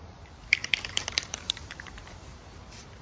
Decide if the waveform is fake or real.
fake